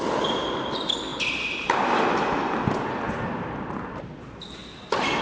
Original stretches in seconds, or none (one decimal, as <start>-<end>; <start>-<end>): 0.0-5.2